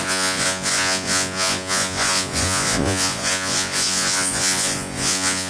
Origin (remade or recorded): remade